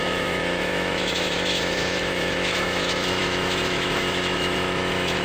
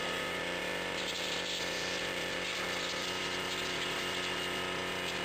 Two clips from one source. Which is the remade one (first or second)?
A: first